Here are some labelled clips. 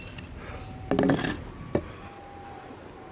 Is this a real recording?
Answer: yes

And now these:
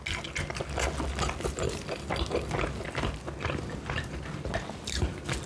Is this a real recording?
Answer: yes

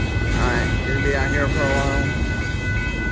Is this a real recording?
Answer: yes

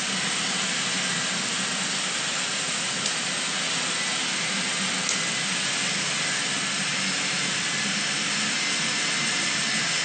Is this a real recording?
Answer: yes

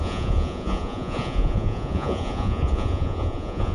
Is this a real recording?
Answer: no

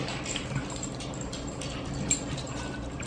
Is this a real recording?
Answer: yes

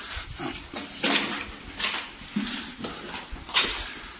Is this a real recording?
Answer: yes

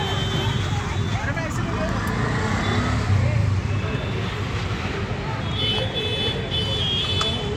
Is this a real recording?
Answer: yes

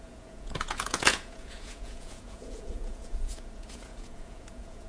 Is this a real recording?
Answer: no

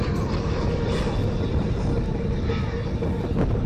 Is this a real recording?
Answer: yes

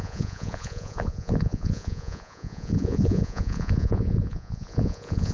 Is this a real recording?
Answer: no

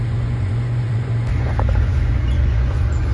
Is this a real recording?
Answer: no